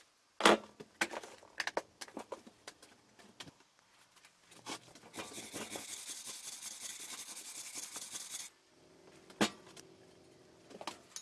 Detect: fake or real real